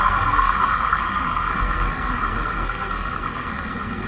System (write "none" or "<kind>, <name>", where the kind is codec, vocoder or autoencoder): codec, SNAC